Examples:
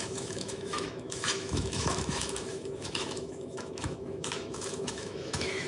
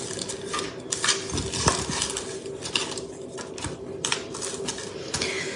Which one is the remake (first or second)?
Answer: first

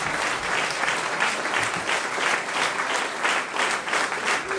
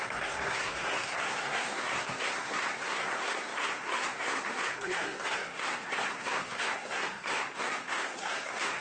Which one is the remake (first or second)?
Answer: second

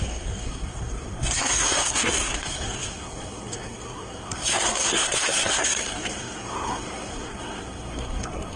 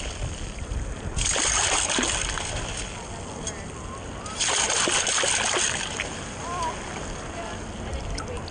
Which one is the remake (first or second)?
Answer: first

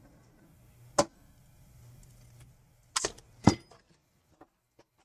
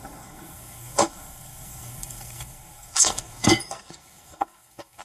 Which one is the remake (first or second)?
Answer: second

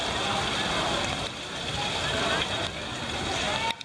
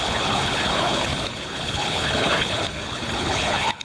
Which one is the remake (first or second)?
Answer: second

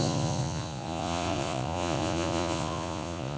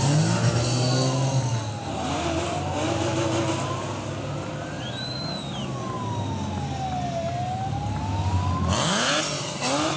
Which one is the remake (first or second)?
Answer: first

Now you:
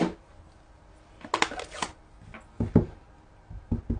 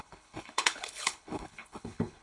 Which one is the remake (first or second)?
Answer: second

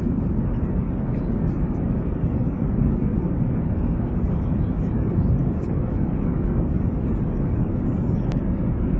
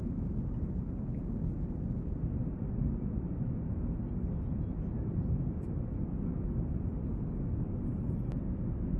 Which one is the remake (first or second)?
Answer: first